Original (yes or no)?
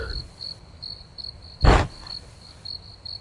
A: no